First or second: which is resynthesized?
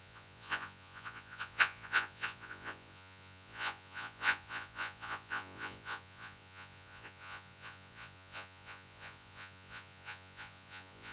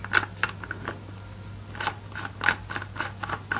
first